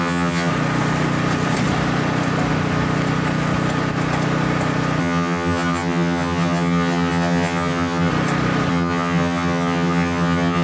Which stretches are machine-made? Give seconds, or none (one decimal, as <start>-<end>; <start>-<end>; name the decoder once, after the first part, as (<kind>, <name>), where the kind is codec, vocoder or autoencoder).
0.0-0.5 (vocoder, HiFi-GAN); 5.0-8.1; 8.7-10.6